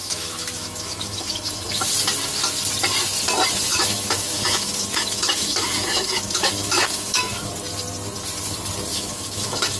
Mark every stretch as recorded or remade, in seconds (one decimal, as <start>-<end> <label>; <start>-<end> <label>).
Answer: 0.0-1.9 remade; 1.9-3.7 recorded; 3.7-7.5 remade; 7.5-8.9 recorded; 8.9-9.8 remade